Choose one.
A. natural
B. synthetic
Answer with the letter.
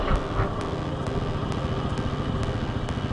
A